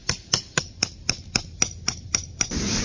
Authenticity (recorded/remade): recorded